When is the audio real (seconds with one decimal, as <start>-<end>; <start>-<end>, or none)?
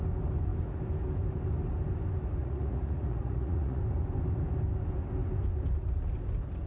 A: 0.0-2.4; 3.8-6.7